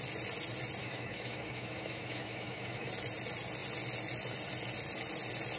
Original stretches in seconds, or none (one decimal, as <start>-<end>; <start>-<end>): 0.0-0.8; 2.9-5.6